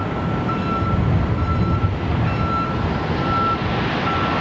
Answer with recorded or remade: recorded